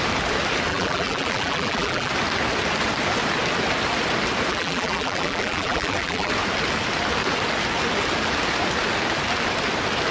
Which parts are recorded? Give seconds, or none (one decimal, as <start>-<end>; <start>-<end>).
0.0-0.7; 2.1-4.5; 6.3-10.1